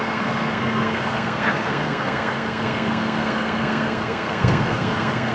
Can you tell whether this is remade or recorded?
remade